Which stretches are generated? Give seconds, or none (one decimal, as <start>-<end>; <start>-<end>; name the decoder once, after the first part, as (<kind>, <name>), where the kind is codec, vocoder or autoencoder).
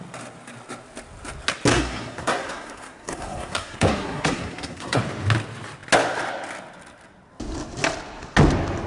1.7-5.0 (codec, SNAC)